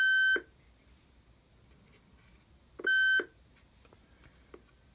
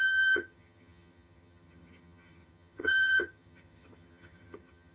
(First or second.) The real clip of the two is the first